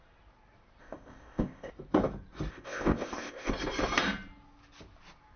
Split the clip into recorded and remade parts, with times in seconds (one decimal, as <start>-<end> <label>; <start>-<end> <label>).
0.0-0.8 recorded; 0.8-1.7 remade; 1.7-2.5 recorded; 2.5-3.5 remade; 3.5-5.4 recorded